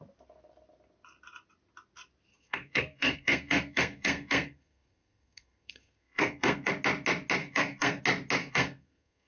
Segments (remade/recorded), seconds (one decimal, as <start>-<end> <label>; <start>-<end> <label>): 0.0-2.3 recorded; 2.3-6.7 remade; 6.7-7.4 recorded; 7.4-8.0 remade; 8.0-8.4 recorded; 8.4-9.3 remade